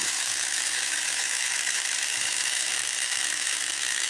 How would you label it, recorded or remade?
remade